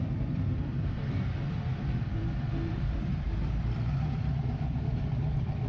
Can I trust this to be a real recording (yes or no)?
no